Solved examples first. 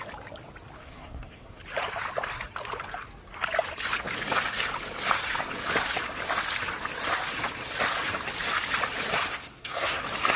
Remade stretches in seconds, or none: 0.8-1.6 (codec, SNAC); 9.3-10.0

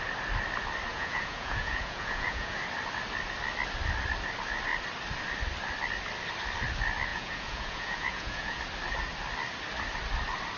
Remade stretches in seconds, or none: 0.9-2.6 (vocoder, Vocos); 7.1-8.6

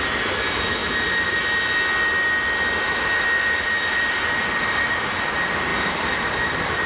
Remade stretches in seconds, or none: 0.0-0.8 (vocoder, BigVGAN v2); 3.9-6.9

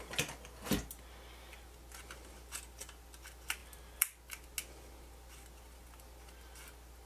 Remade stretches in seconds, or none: none